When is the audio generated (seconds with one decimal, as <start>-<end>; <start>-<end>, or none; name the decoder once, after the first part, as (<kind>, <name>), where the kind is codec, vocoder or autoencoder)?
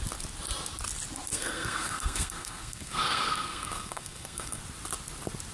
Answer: 1.3-4.6 (codec, SNAC)